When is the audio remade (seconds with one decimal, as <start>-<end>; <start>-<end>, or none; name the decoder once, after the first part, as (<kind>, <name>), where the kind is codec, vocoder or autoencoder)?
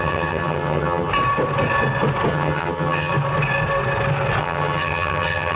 0.0-1.1 (vocoder, HiFi-GAN); 2.3-3.1; 4.4-5.6